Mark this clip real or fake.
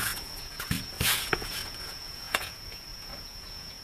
fake